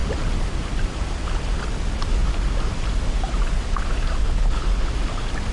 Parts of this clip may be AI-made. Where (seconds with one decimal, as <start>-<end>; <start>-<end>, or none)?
4.2-4.9